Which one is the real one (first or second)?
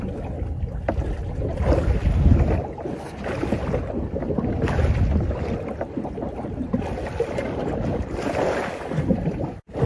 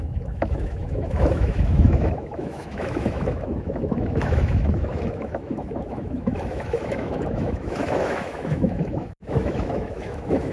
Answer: first